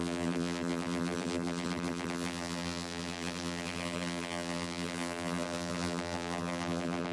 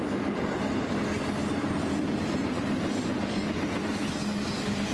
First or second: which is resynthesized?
first